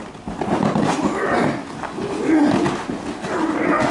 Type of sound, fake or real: real